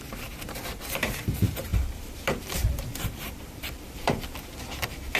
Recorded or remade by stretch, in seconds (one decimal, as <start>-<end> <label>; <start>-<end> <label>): 0.0-1.7 recorded; 1.7-4.4 remade; 4.4-5.2 recorded